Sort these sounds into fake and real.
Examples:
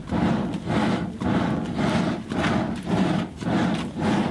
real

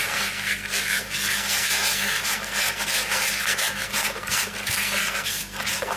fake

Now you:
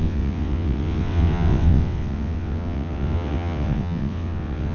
fake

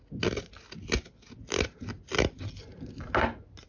real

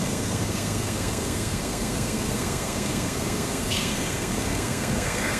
fake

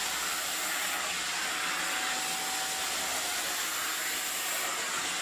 real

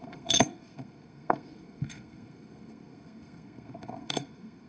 fake